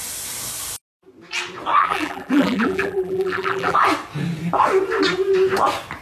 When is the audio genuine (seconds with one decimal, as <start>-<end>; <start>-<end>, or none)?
0.0-1.8; 3.8-6.0